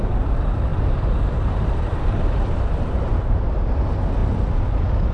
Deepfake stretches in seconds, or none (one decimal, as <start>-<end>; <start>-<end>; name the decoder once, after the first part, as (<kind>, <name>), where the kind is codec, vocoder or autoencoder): 0.7-3.8 (vocoder, BigVGAN v2)